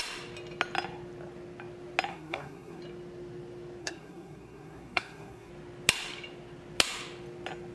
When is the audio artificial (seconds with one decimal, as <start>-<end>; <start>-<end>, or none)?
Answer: 2.1-2.8; 3.8-5.5